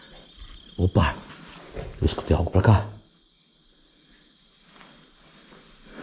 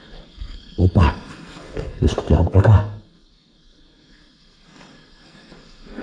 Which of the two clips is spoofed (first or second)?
second